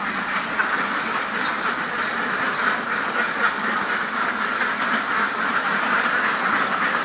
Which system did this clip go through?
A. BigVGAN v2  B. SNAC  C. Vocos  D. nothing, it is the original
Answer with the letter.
A